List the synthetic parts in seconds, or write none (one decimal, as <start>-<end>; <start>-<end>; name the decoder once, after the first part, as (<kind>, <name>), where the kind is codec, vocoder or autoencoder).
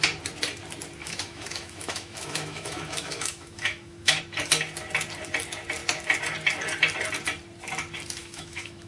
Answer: 1.0-4.2 (autoencoder, DAC-VAE); 8.2-8.9